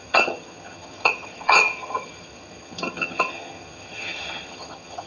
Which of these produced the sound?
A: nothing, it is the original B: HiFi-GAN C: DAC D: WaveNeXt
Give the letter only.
B